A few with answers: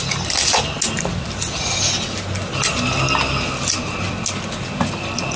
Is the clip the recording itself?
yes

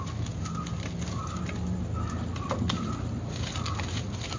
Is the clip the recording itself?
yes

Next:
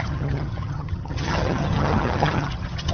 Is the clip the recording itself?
no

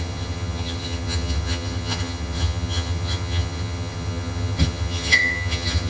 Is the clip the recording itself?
no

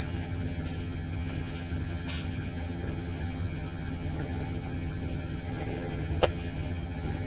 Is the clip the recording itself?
no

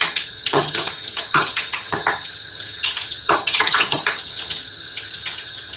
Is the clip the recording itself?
no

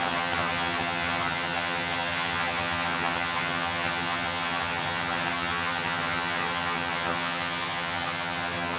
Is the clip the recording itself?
no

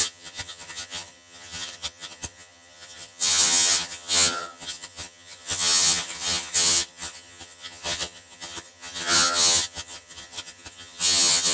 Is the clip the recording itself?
no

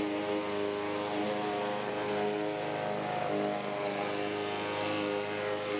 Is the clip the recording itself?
yes